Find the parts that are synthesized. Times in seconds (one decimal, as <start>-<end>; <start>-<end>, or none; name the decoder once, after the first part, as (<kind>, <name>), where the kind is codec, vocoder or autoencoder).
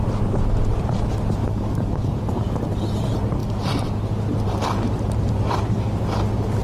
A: 1.4-2.2 (codec, DAC)